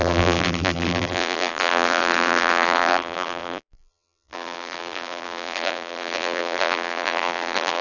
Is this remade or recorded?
remade